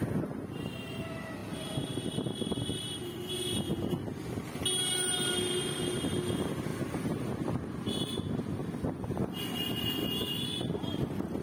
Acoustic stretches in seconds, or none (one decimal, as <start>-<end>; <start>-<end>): 0.0-6.7; 7.3-8.6; 9.2-11.4